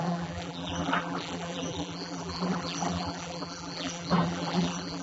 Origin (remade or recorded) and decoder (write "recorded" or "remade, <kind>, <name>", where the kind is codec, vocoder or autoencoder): remade, vocoder, BigVGAN v2